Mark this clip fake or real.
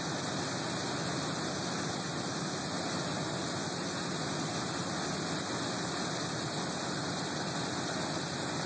real